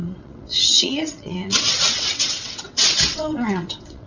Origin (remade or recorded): remade